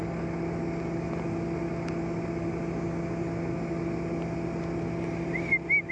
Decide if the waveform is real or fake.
real